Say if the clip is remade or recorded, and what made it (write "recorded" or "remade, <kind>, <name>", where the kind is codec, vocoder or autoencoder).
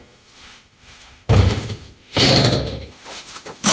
remade, autoencoder, DAC-VAE